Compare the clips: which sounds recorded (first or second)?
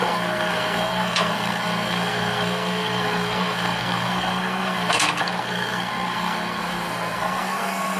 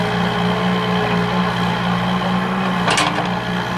second